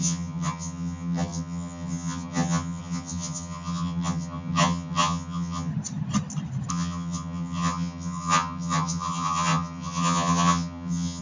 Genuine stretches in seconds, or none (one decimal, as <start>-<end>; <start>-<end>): 5.7-6.7